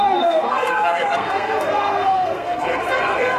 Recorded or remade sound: remade